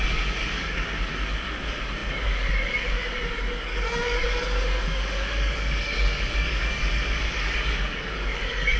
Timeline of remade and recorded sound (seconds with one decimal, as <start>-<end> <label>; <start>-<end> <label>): 0.0-8.8 remade